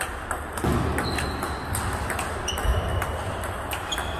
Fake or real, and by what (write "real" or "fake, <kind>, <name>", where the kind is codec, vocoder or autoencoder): real